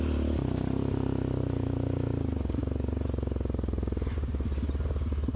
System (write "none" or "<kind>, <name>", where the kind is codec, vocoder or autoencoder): none